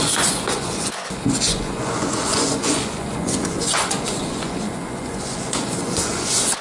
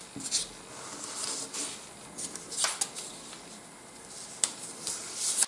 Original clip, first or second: second